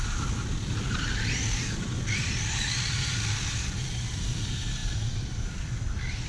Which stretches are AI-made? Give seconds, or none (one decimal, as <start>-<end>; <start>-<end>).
none